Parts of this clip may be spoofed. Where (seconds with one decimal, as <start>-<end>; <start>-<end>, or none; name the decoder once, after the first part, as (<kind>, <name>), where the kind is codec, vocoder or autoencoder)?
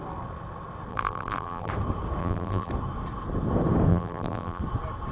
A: 0.9-1.7 (vocoder, BigVGAN v2); 2.2-2.7; 3.9-4.6